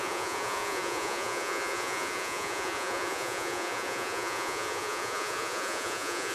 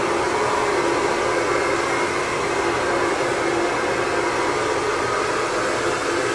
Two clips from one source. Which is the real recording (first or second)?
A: second